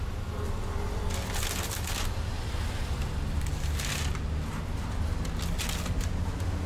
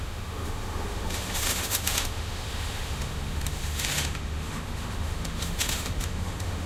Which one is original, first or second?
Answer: first